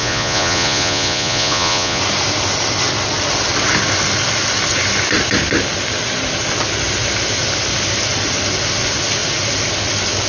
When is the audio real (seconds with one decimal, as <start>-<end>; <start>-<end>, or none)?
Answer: 2.0-10.3